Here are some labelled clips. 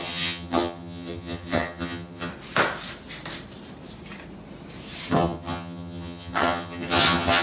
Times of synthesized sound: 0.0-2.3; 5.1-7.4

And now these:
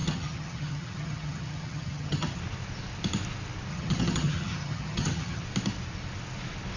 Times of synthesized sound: 0.0-2.4; 3.7-5.4

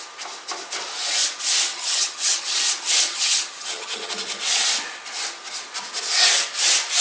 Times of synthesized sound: 1.7-2.6; 3.1-4.1

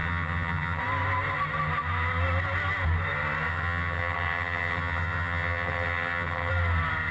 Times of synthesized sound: 0.0-0.8; 3.5-6.5

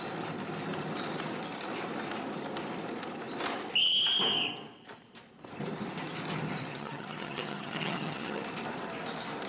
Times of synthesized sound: 6.7-8.4

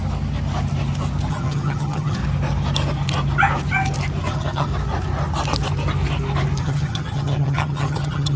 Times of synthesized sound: 1.3-2.2; 4.3-4.7; 6.6-8.4